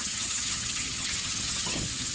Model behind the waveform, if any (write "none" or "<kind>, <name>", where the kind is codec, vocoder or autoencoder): vocoder, HiFi-GAN